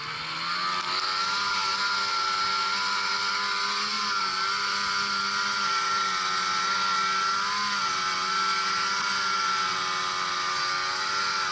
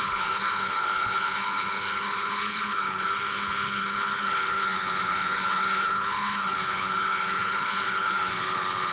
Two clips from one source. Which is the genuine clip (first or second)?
first